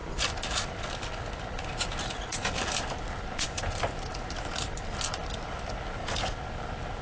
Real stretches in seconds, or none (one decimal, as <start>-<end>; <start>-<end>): 0.0-7.0